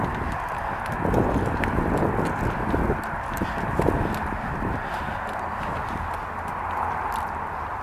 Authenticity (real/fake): real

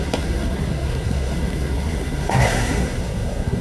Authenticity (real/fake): fake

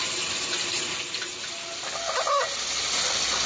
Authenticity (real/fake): real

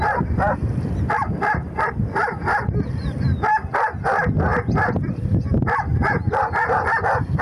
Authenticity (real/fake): real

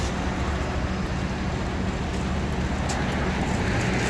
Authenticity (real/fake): real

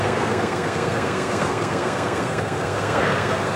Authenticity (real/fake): fake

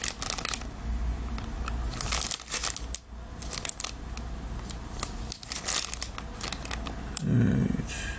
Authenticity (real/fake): real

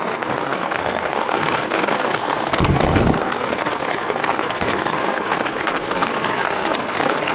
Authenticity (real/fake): fake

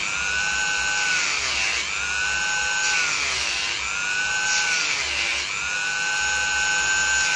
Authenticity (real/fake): real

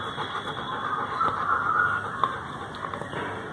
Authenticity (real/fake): real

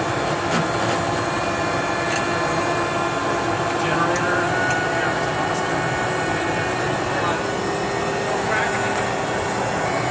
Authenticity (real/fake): real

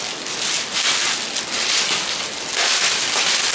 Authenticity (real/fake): real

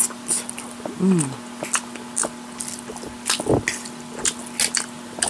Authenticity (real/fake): real